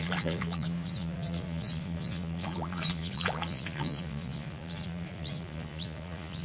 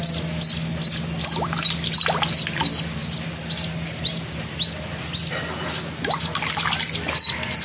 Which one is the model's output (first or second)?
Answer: first